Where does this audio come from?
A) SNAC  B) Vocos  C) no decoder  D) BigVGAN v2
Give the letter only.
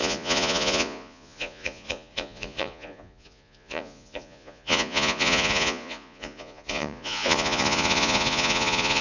B